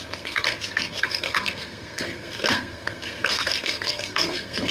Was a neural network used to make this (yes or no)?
yes